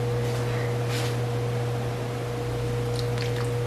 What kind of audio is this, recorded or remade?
remade